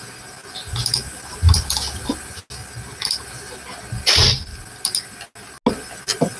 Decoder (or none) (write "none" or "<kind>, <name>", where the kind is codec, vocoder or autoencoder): none